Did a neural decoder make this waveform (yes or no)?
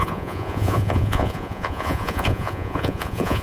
yes